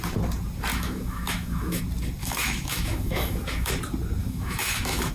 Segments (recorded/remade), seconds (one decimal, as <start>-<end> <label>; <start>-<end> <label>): 0.0-0.7 recorded; 0.7-1.8 remade; 1.8-2.2 recorded; 2.2-3.7 remade; 3.7-4.2 recorded; 4.2-5.1 remade